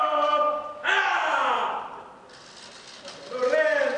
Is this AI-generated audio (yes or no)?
no